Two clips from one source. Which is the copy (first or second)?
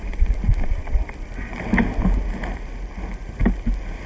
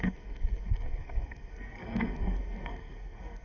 second